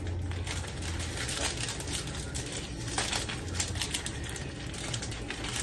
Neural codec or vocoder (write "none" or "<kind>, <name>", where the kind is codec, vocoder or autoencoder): none